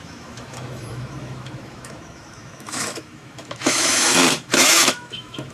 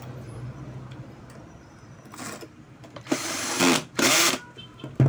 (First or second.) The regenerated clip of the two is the first